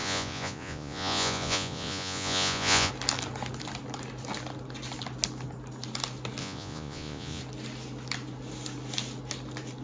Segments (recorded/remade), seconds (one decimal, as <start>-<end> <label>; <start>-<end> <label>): 0.0-2.9 remade; 2.9-6.4 recorded; 6.4-7.4 remade; 7.4-9.8 recorded